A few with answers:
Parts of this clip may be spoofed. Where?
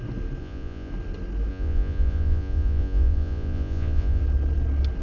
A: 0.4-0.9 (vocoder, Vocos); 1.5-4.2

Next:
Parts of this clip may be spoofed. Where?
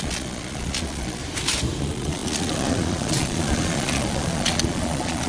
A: 0.0-1.2 (vocoder, Vocos); 1.8-5.3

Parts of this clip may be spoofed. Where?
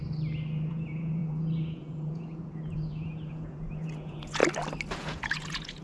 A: 0.7-4.4 (vocoder, Vocos); 5.0-5.8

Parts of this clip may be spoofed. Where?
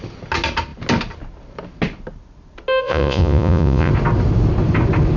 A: 2.8-3.9 (vocoder, Vocos)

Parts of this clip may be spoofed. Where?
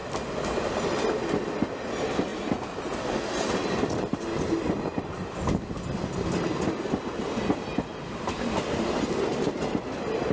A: none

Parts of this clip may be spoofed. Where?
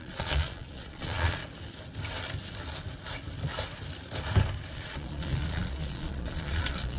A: 0.0-1.4 (vocoder, Vocos); 4.7-7.0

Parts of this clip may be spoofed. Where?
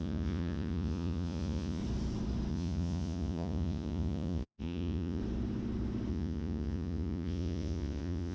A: 0.0-1.8 (vocoder, Vocos); 2.5-5.2; 6.1-8.3